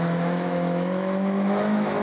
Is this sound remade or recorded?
remade